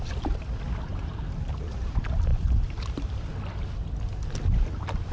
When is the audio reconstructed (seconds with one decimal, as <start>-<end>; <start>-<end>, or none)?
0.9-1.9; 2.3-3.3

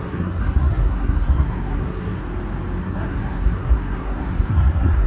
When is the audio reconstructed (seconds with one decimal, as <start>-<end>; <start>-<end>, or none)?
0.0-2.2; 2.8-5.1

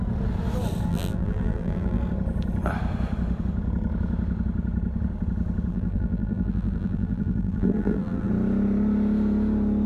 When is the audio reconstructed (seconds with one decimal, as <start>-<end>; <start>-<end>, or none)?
0.9-2.0; 5.7-8.3

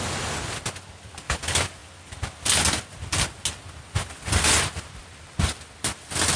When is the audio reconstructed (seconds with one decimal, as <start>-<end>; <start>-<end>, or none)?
none

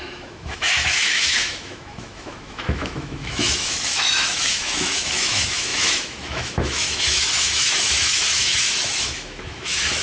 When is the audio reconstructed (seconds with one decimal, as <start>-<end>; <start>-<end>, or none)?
0.0-10.0